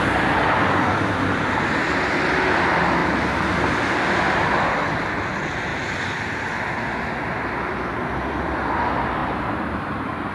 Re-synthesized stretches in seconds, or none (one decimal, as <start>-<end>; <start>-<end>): 9.2-10.3